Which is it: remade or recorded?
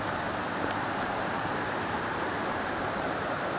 remade